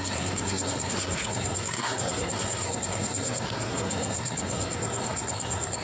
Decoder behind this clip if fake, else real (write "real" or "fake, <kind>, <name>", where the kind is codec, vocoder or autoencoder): fake, codec, SNAC